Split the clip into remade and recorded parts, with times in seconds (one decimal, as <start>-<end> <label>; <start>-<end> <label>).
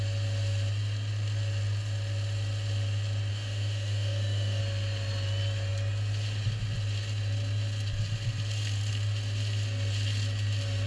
0.0-3.3 recorded; 3.3-4.6 remade; 4.6-10.9 recorded